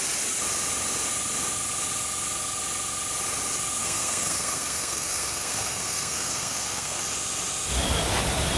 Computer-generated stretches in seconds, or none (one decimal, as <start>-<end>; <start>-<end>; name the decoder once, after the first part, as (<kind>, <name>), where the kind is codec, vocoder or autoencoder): 3.8-7.0 (codec, SNAC)